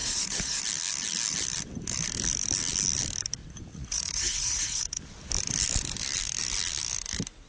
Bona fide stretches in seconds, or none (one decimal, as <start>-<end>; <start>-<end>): 0.6-3.7; 5.0-7.5